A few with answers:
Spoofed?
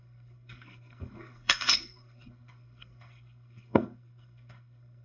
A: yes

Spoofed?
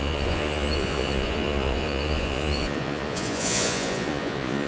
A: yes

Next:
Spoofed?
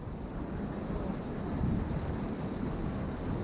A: no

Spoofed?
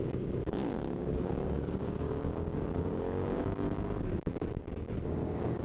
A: yes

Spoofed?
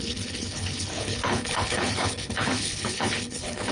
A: yes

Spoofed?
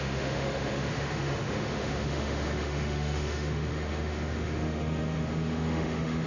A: yes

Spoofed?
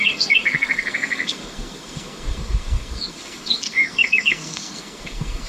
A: yes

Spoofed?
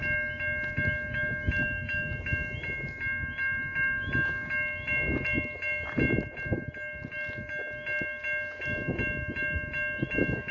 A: no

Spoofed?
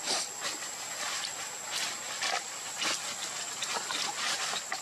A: no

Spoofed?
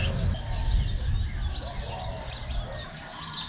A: no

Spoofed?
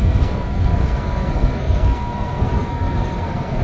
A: yes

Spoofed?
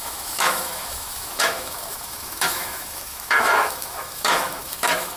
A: yes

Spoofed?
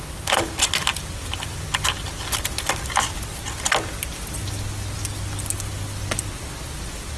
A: no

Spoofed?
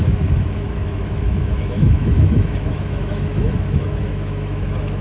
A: yes